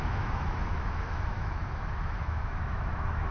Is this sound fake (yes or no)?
yes